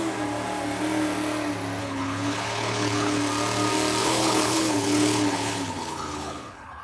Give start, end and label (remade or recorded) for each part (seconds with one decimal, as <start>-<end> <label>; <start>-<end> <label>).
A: 0.0-1.8 recorded; 1.8-3.2 remade; 3.2-4.0 recorded; 4.0-6.8 remade